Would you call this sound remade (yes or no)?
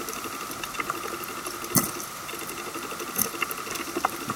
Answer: no